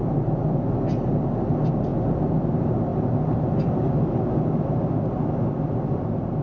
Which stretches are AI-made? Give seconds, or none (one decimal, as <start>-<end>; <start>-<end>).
none